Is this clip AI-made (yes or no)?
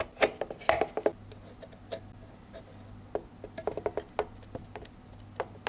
no